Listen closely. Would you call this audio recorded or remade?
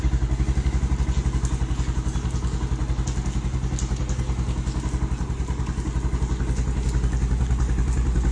recorded